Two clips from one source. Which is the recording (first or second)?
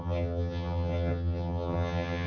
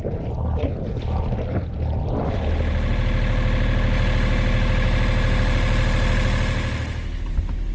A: second